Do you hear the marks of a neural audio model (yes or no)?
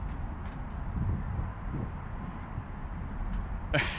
no